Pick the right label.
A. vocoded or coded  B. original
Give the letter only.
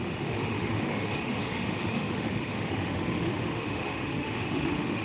A